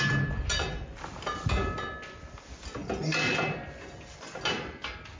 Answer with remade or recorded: recorded